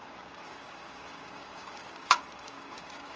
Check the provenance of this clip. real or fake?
fake